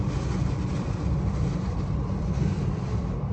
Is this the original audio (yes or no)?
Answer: yes